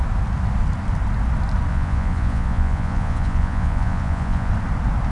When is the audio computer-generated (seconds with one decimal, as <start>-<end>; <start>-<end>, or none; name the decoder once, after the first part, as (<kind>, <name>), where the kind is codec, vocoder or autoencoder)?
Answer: 1.7-4.5 (vocoder, Vocos)